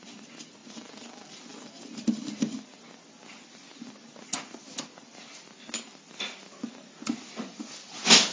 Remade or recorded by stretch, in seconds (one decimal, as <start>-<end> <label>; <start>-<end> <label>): 0.0-8.3 recorded